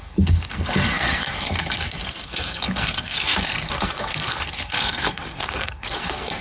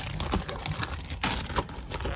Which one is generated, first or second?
first